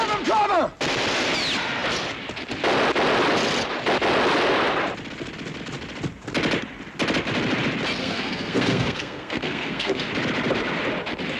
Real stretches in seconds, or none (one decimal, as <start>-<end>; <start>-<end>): 0.0-8.0; 10.1-11.4